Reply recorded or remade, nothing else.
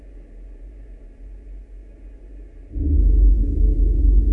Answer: recorded